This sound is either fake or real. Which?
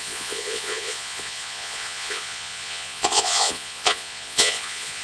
fake